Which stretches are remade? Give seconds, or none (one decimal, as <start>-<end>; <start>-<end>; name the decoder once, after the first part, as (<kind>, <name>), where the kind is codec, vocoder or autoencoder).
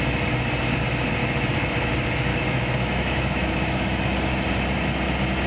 1.2-1.9 (autoencoder, DAC-VAE); 2.3-4.3